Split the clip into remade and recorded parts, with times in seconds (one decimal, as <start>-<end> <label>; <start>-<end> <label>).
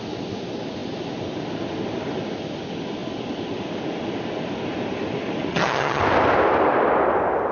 0.0-5.5 recorded; 5.5-6.0 remade; 6.0-7.5 recorded